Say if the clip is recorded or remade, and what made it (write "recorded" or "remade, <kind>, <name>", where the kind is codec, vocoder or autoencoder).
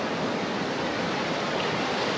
remade, vocoder, BigVGAN v2